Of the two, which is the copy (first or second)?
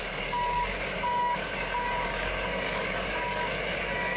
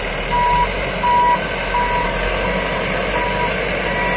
first